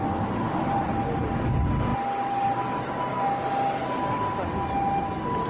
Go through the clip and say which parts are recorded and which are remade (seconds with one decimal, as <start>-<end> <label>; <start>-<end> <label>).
0.0-5.5 recorded